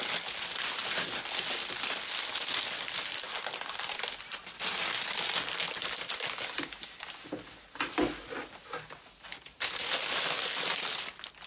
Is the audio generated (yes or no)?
no